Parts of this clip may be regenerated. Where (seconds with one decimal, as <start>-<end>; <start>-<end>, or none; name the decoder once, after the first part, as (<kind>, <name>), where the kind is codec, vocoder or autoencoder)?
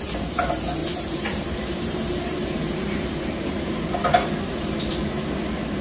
0.8-4.3 (vocoder, BigVGAN v2)